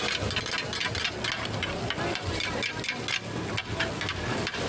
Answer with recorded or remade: recorded